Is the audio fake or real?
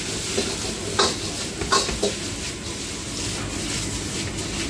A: real